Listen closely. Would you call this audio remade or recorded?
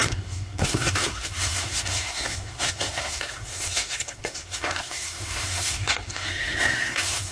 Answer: remade